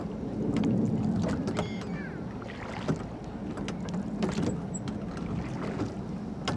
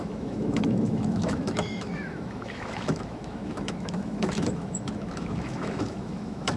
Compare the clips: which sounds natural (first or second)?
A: first